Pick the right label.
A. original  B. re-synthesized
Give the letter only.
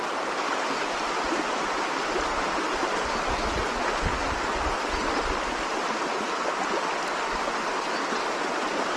A